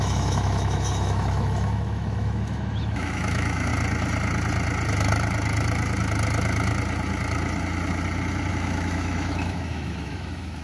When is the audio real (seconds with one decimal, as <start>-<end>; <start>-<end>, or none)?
3.7-8.5